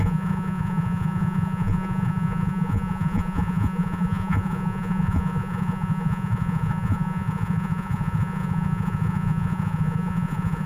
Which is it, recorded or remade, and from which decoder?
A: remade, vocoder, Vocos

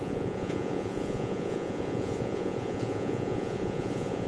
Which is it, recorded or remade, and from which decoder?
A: remade, vocoder, Vocos